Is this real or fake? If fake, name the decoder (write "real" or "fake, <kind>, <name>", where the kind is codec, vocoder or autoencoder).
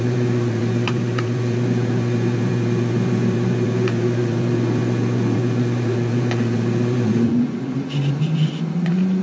fake, vocoder, Vocos